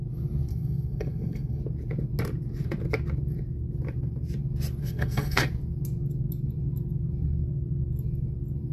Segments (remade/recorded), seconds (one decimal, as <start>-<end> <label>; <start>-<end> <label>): 0.0-0.5 recorded; 0.5-1.6 remade; 1.6-4.8 recorded; 4.8-5.5 remade; 5.5-8.7 recorded